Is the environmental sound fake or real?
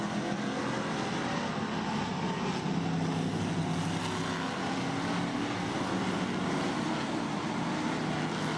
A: real